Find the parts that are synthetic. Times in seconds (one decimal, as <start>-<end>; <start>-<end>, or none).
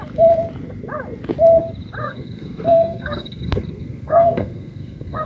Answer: 2.0-5.3